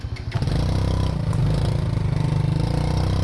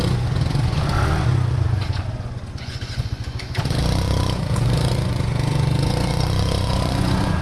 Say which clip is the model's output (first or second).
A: second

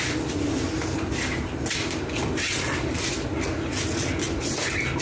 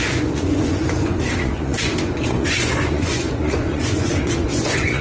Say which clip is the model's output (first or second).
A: second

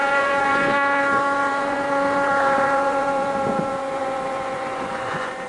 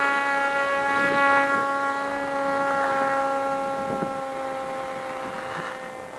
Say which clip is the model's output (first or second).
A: first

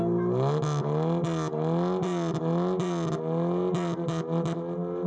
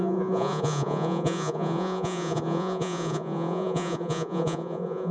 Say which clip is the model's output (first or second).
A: second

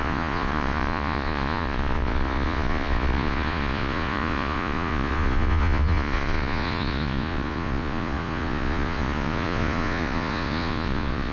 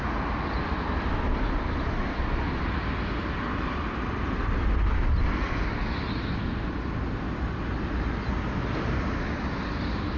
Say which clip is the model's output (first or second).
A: first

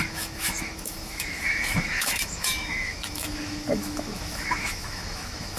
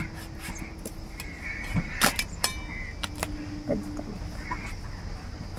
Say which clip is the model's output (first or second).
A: first